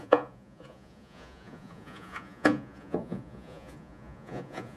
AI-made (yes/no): yes